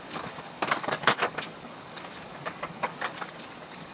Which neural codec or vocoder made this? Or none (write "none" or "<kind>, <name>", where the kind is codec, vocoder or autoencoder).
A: codec, DAC